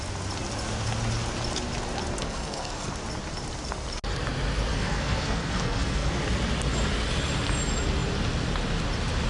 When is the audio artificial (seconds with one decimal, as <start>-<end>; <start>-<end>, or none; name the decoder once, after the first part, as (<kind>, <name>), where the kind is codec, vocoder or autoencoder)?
2.2-2.9 (codec, SNAC); 4.7-6.1